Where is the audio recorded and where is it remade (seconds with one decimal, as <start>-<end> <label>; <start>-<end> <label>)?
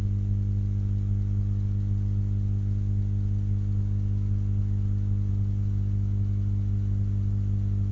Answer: 0.0-5.3 recorded; 5.3-7.9 remade